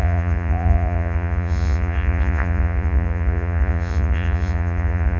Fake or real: fake